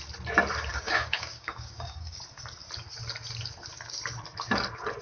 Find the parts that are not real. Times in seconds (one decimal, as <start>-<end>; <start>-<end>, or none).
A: 0.7-2.2